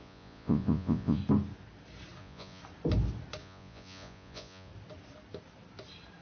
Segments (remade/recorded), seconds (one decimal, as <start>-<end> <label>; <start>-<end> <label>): 0.0-1.2 remade; 1.2-2.2 recorded; 2.2-2.6 remade; 2.6-3.4 recorded; 3.4-4.7 remade; 4.7-6.2 recorded